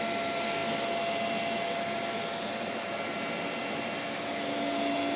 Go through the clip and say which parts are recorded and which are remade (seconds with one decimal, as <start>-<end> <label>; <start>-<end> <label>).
0.0-5.2 recorded